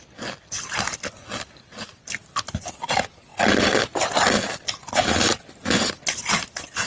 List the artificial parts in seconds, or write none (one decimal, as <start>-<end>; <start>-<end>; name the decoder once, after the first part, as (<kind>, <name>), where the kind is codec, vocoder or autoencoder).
none